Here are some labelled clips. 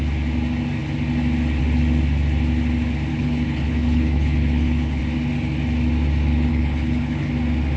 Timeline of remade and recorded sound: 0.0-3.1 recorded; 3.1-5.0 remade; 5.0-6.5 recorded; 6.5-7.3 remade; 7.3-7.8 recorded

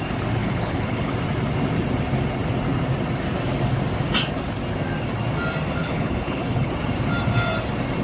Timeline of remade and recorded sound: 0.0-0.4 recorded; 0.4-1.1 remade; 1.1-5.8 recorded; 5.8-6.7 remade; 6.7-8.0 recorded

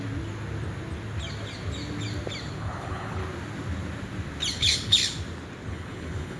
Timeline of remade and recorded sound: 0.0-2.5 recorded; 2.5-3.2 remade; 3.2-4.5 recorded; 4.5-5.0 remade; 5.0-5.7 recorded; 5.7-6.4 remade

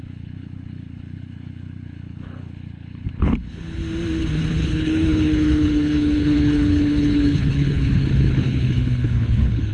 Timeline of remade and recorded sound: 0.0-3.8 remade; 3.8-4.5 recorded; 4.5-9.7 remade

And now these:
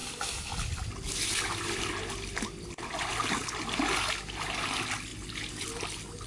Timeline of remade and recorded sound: 0.0-6.3 recorded